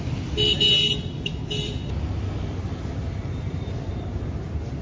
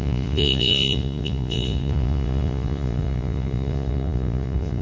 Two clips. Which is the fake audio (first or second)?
second